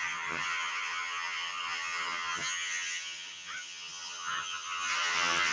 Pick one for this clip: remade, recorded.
remade